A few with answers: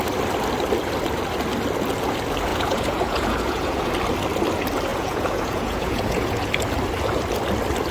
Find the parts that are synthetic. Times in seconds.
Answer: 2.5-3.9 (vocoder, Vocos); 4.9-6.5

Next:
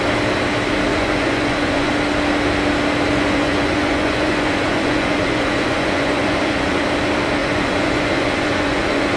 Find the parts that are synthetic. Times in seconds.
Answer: 0.9-1.9 (vocoder, Vocos); 3.1-6.8; 7.4-9.2

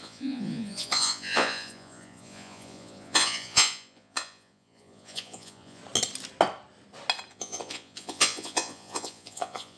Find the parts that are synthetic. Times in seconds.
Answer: 0.0-5.8 (vocoder, Vocos); 7.3-9.8